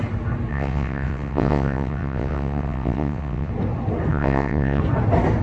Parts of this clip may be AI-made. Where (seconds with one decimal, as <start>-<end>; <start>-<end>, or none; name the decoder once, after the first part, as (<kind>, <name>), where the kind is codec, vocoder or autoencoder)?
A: 0.5-3.5 (vocoder, WaveNeXt); 4.1-4.8